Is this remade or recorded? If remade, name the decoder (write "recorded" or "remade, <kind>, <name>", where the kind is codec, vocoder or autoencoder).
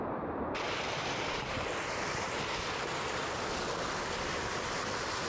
recorded